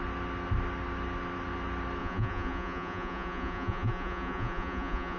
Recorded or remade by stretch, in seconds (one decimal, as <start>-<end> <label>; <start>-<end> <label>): 0.0-2.0 recorded; 2.0-5.2 remade